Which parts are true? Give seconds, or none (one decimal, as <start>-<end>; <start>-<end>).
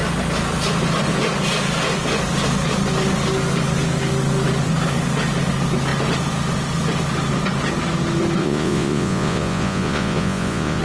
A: 0.0-8.4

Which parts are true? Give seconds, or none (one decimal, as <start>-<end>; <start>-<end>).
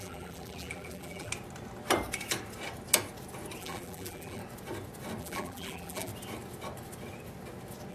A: 1.3-3.6; 4.4-5.2; 6.1-7.9